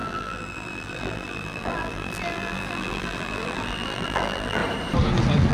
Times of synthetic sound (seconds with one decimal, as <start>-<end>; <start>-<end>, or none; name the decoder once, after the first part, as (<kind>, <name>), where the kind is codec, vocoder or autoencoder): 0.0-4.6 (vocoder, BigVGAN v2)